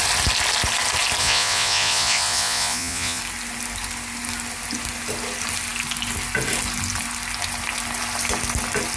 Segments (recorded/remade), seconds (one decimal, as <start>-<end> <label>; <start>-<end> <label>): 0.0-1.2 recorded; 1.2-3.2 remade; 3.2-9.0 recorded